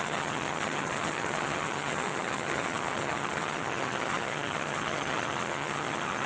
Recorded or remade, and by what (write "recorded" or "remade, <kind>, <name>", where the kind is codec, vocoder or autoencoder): remade, vocoder, HiFi-GAN